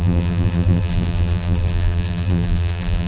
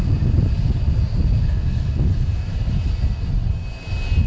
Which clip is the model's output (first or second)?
first